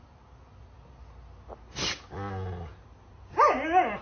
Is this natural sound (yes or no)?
yes